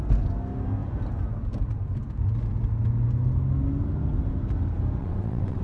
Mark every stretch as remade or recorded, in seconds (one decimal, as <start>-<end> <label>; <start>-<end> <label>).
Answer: 0.0-5.0 recorded; 5.0-5.6 remade